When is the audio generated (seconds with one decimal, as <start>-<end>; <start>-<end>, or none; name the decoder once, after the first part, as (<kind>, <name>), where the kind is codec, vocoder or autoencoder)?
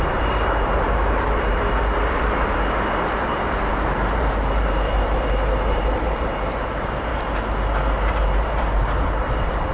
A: 0.0-7.1 (vocoder, BigVGAN v2); 8.1-9.7